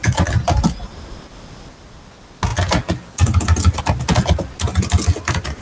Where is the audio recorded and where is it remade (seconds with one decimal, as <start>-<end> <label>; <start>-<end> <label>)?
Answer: 0.0-5.6 recorded

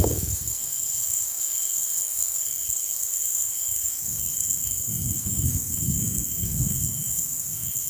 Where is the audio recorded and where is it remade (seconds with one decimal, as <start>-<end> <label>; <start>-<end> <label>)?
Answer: 0.0-7.9 remade

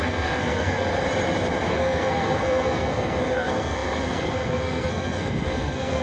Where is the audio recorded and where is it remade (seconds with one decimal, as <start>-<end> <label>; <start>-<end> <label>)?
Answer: 0.0-0.9 remade; 0.9-1.7 recorded; 1.7-6.0 remade